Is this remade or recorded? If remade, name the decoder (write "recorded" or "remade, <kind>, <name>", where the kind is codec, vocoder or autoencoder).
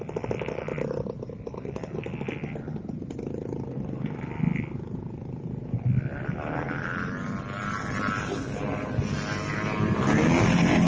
recorded